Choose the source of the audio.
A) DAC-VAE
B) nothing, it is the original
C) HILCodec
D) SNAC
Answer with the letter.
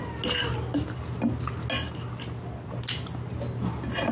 B